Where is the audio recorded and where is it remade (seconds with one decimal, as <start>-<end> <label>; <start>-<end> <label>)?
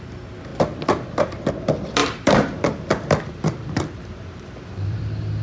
0.0-2.0 recorded; 2.0-5.0 remade; 5.0-5.4 recorded